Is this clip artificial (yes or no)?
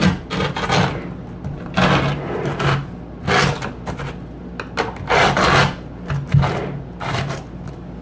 no